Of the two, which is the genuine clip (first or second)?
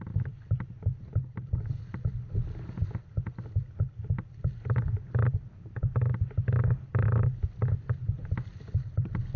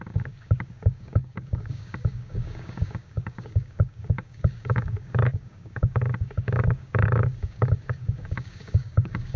first